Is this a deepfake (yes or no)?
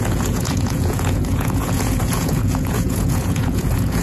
yes